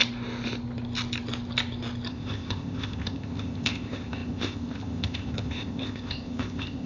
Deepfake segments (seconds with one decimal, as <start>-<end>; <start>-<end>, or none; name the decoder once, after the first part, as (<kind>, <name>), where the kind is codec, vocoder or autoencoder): 2.1-6.9 (codec, ZipCodec)